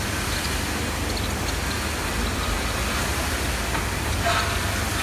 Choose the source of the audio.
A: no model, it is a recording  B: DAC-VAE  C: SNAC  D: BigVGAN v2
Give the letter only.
A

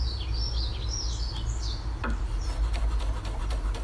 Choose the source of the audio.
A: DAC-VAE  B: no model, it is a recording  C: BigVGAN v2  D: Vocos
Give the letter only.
B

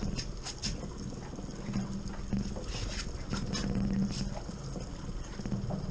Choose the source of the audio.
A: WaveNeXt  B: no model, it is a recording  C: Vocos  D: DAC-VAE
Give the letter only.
B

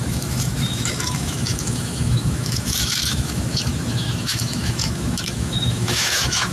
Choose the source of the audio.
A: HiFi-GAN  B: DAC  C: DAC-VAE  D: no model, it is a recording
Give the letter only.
C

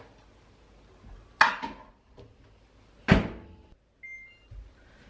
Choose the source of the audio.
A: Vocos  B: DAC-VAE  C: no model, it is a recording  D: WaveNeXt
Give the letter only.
C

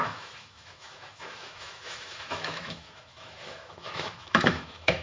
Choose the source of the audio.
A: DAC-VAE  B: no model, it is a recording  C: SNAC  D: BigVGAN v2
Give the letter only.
A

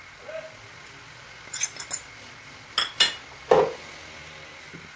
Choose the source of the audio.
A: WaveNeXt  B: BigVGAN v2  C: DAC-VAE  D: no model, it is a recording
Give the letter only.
D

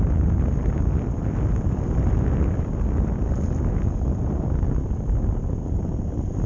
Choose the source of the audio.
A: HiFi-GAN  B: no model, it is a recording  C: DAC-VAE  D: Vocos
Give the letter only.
B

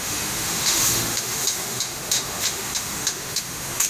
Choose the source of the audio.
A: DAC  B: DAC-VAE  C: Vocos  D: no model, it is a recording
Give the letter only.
B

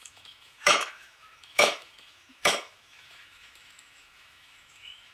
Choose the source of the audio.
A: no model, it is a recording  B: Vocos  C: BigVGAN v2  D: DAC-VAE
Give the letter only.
D